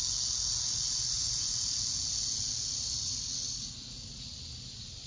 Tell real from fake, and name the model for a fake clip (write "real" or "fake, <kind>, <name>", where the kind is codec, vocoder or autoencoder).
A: real